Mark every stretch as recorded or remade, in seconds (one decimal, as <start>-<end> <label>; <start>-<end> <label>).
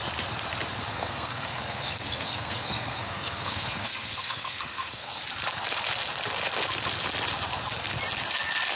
0.0-0.9 recorded; 0.9-5.2 remade; 5.2-8.8 recorded